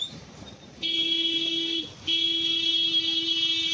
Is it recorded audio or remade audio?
recorded